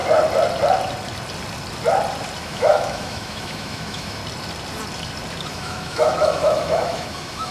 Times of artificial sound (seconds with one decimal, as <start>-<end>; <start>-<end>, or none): 2.4-4.2; 5.5-7.5